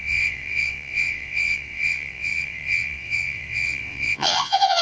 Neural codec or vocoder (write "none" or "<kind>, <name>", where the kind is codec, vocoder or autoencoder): vocoder, WaveNeXt